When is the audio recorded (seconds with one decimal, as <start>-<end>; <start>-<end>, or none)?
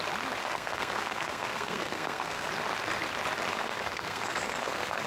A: 0.0-0.4; 2.5-3.5